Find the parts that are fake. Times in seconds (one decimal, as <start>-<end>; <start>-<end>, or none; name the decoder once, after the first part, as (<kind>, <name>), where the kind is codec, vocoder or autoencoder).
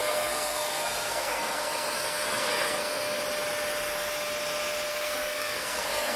0.0-3.2 (codec, SNAC); 4.9-6.2